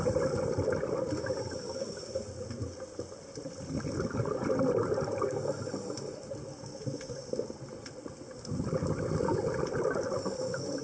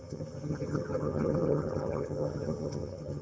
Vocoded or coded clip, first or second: second